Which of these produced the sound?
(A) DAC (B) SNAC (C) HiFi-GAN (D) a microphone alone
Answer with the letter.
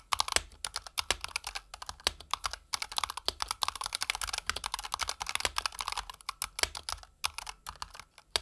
D